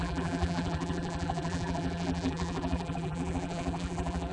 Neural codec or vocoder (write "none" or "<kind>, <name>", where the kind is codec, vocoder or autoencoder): vocoder, BigVGAN v2